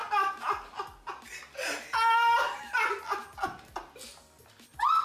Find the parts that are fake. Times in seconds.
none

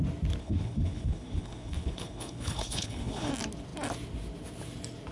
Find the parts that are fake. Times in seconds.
0.4-3.3 (codec, HILCodec)

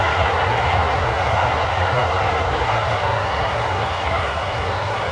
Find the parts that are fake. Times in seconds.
0.0-5.1 (codec, SNAC)

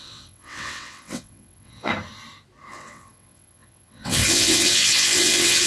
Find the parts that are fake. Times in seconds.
0.0-1.9 (vocoder, WaveNeXt); 2.7-5.7

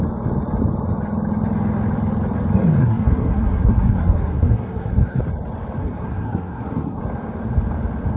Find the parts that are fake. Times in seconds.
2.8-5.2 (codec, SNAC); 5.8-7.0

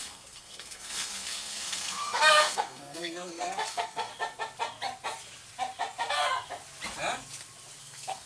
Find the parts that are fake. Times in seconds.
0.0-4.1 (codec, SNAC); 7.8-8.3